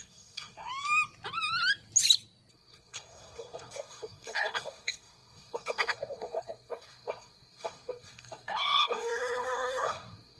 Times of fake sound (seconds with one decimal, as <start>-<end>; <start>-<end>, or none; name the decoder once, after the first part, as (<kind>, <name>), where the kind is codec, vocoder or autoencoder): 0.0-0.7 (codec, SNAC); 2.5-10.4